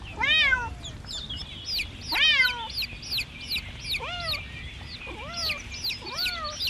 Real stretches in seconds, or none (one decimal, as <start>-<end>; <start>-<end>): 0.0-6.7